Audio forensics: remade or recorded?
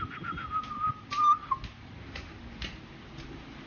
recorded